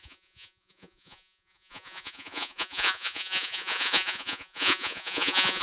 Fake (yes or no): yes